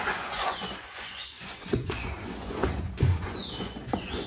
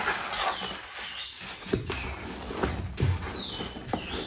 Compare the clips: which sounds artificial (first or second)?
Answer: first